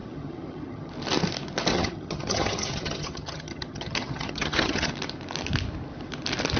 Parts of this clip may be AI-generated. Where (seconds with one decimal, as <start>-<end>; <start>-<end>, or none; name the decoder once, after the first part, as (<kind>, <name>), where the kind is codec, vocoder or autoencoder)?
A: 0.0-0.9 (vocoder, HiFi-GAN); 1.7-4.9